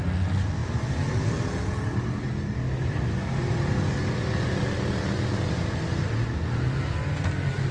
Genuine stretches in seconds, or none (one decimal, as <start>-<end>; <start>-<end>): 0.0-7.7

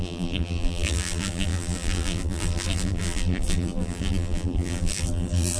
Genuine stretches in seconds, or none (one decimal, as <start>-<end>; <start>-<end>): none

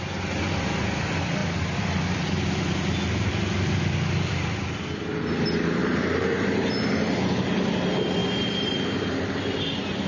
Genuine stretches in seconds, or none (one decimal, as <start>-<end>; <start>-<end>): 0.0-5.8; 6.7-8.2; 9.2-10.1

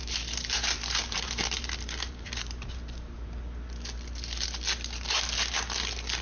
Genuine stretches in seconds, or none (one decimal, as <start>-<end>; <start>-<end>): 3.4-6.2

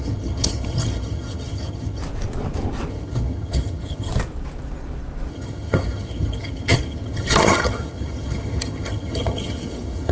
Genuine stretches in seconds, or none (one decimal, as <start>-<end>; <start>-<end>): 2.0-2.9; 4.1-5.3